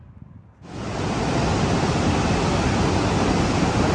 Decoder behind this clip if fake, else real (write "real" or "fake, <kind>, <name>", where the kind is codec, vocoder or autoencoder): real